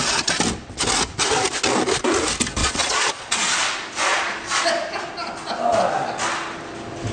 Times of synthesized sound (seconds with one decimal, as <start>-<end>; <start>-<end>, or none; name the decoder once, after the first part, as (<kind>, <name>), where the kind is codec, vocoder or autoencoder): 2.6-3.4 (vocoder, Vocos); 4.1-4.6